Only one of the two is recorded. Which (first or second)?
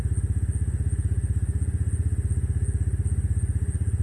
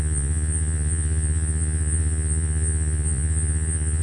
first